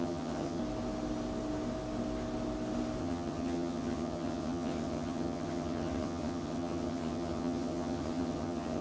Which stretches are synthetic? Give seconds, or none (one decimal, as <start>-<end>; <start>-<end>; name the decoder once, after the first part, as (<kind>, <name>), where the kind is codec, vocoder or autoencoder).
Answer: 0.0-0.6 (vocoder, HiFi-GAN); 3.0-8.8